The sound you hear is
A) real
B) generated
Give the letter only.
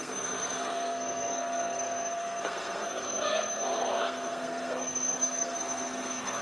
B